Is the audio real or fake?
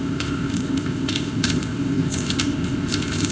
fake